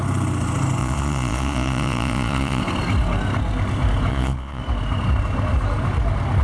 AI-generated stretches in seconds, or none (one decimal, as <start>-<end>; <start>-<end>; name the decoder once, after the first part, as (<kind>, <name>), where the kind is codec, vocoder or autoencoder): 0.8-2.6 (vocoder, Vocos); 4.1-4.6